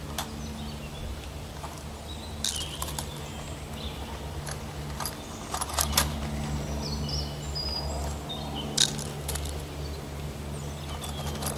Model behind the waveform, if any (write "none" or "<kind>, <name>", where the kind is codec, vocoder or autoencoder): none